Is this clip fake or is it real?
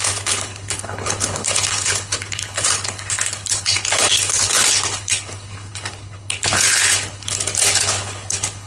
fake